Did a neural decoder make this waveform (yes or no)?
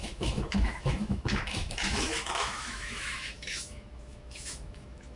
yes